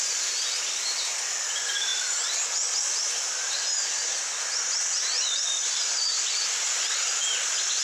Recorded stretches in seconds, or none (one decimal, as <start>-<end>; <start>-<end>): 0.0-7.8

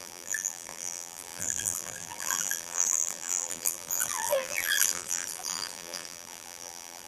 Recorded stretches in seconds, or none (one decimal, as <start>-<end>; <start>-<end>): none

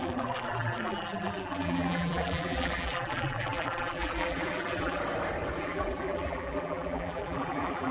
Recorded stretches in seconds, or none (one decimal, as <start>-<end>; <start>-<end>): 5.0-5.6

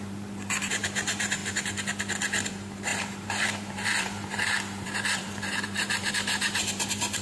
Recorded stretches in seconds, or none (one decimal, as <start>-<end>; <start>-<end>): 1.4-2.5